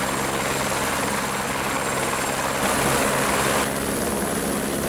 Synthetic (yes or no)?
no